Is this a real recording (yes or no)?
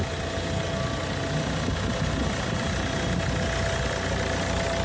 yes